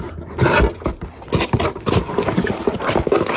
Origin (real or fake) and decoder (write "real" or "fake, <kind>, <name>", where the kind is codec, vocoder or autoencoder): real